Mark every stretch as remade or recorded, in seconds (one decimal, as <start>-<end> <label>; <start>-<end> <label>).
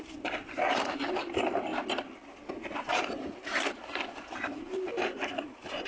0.0-1.7 remade; 1.7-2.5 recorded; 2.5-5.9 remade